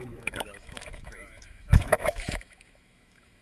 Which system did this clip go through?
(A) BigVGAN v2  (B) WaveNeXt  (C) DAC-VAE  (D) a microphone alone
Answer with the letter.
C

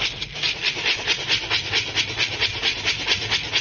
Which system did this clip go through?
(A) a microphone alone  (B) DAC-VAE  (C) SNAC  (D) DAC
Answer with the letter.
A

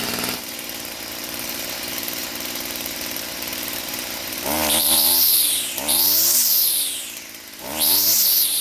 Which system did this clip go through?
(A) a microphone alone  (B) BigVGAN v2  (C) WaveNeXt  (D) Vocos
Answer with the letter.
B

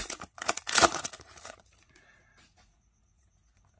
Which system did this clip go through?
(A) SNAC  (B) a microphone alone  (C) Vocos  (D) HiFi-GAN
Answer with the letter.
C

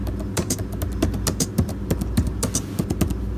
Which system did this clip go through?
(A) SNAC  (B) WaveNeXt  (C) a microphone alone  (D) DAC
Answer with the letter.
C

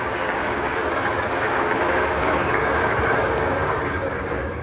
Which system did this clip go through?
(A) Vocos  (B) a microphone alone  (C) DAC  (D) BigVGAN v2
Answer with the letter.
C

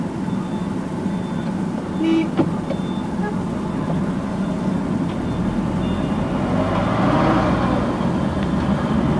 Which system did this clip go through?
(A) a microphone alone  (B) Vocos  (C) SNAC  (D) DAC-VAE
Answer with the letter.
A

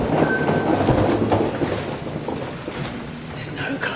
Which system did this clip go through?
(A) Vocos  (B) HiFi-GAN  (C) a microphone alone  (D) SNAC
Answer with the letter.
C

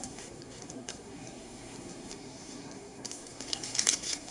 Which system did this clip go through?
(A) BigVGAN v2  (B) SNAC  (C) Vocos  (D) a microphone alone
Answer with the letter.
B